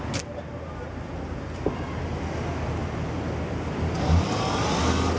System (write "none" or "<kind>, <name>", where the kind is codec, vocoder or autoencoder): none